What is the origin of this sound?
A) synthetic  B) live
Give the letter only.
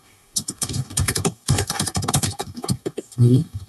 A